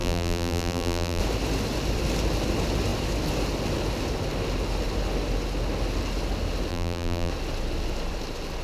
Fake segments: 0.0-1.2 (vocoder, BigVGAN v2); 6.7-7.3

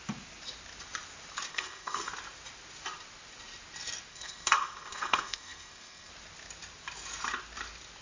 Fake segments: 1.5-2.1 (codec, SNAC); 4.1-6.1

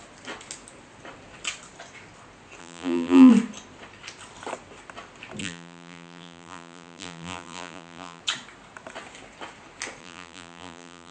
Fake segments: 2.6-3.3 (vocoder, BigVGAN v2); 5.4-8.2; 10.0-11.1

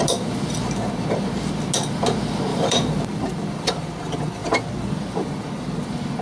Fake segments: 2.5-3.0 (vocoder, BigVGAN v2)

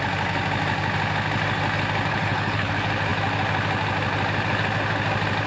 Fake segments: 2.1-2.7 (codec, HILCodec)

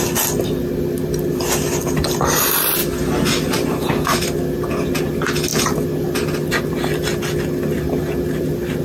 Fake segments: none